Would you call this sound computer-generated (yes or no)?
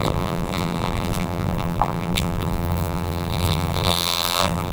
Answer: yes